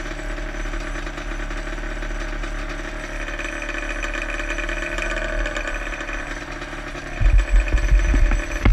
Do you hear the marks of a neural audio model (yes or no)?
no